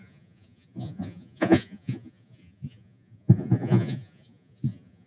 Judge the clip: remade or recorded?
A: remade